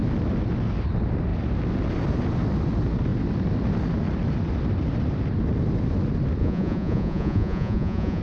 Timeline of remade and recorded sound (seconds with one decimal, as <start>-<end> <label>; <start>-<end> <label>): 0.0-6.4 recorded; 6.4-8.2 remade